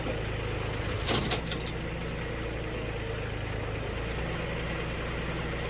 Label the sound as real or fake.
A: real